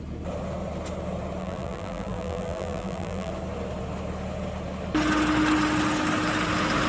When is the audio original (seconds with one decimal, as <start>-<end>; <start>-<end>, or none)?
0.0-1.4; 3.3-6.9